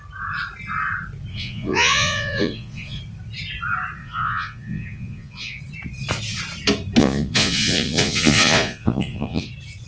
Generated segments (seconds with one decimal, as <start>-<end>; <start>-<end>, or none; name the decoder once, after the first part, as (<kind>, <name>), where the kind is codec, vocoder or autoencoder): 1.3-3.0 (vocoder, Vocos); 4.0-5.6; 7.0-9.5